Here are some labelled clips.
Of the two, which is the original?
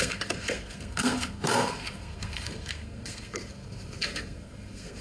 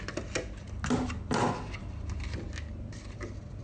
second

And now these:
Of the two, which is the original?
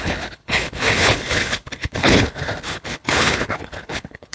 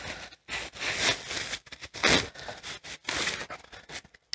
second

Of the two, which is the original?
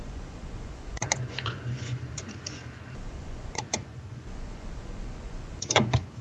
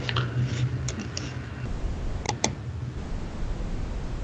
second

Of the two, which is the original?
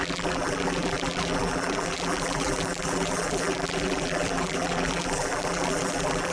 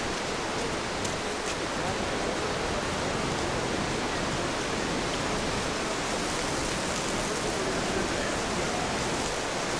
second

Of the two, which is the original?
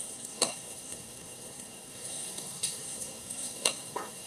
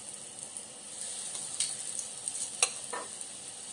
second